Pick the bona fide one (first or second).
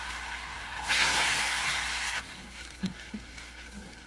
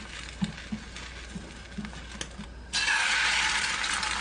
second